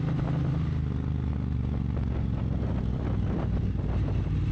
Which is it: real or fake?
real